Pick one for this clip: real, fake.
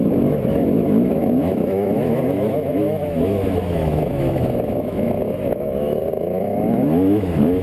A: fake